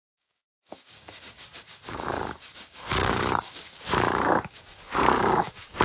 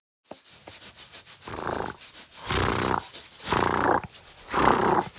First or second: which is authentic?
second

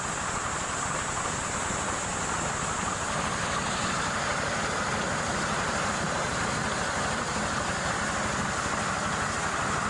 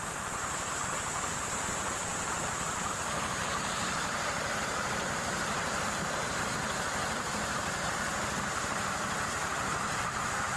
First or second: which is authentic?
first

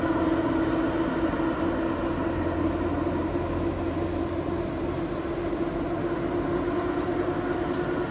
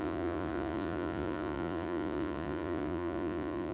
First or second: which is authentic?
first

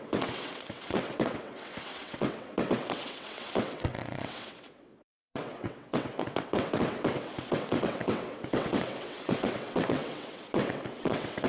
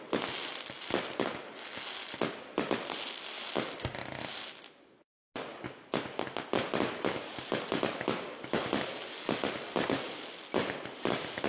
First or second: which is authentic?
second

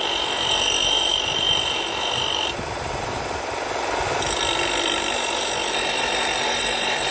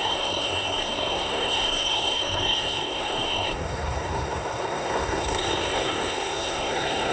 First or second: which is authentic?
first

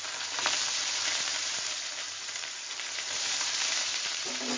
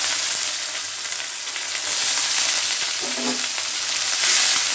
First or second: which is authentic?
second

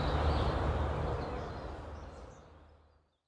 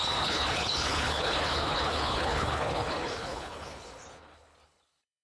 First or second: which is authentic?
first